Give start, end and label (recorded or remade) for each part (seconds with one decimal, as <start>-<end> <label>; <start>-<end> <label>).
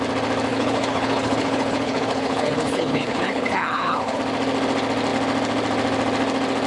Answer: 0.0-0.5 recorded; 0.5-4.2 remade; 4.2-6.7 recorded